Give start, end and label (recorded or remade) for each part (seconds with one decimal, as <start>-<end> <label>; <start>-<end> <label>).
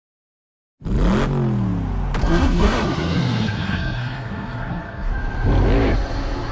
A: 0.0-2.2 recorded; 2.2-5.1 remade; 5.1-6.5 recorded